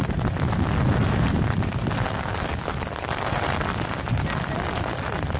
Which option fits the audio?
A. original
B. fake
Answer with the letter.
A